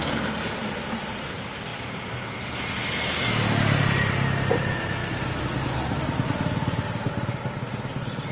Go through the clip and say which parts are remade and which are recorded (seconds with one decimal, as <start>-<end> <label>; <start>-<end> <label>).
0.0-8.3 recorded